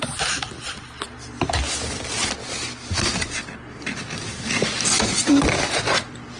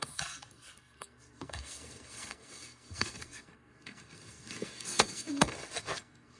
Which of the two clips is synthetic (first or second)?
second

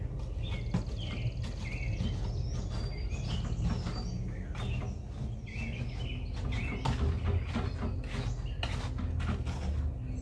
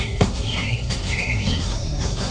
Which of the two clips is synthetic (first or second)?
second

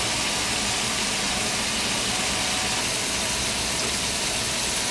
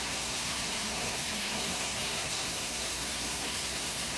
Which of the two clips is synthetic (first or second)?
second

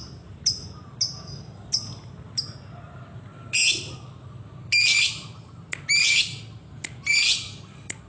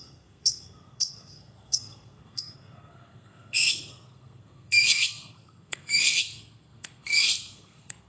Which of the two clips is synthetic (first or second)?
second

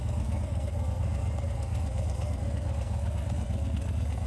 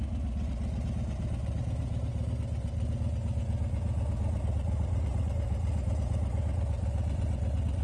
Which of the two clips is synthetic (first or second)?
first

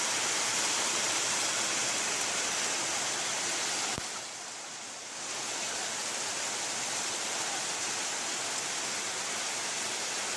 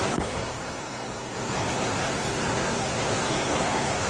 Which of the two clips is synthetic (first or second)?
second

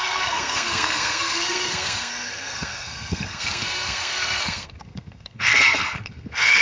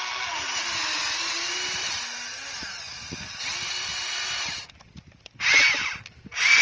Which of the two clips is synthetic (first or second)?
first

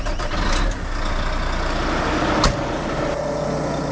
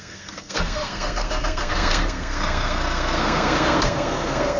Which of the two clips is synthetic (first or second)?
second